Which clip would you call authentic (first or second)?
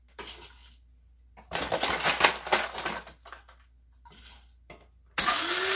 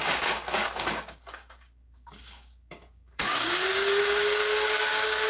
first